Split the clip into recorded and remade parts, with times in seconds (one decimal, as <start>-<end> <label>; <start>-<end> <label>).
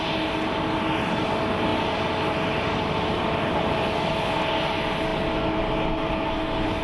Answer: 0.0-6.8 recorded